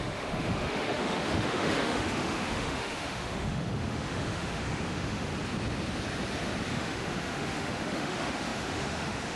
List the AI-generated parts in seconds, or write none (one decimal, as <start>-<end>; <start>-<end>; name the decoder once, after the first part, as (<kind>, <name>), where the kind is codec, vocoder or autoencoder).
0.0-5.3 (autoencoder, DAC-VAE); 6.7-9.4